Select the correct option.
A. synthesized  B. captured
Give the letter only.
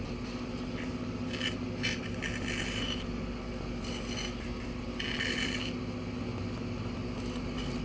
B